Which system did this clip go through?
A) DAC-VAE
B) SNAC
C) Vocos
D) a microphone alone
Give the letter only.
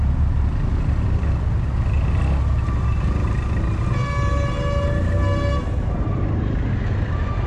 D